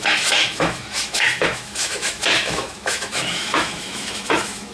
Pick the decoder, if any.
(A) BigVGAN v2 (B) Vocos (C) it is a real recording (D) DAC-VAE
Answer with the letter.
D